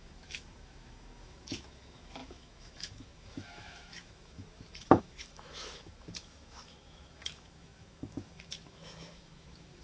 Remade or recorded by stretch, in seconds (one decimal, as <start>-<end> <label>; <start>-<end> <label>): 0.0-9.8 remade